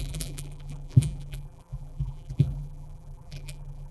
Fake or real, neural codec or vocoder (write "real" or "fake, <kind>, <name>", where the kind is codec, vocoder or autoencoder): fake, vocoder, BigVGAN v2